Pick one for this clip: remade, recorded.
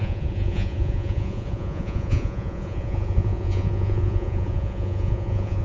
remade